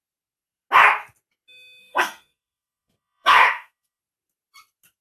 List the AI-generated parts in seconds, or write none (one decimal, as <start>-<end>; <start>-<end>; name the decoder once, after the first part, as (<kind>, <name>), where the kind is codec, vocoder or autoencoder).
1.8-4.0 (codec, SNAC)